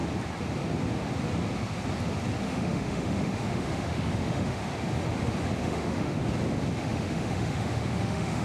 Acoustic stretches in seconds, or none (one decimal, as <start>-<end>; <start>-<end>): 0.0-2.4; 4.6-5.6; 6.2-6.8